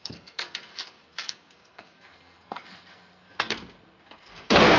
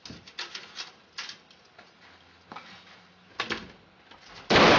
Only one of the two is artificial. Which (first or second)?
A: first